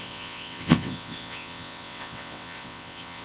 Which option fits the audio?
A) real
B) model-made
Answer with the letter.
B